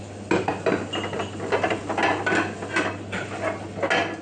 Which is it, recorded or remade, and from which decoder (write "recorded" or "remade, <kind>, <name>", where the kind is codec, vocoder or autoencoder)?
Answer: recorded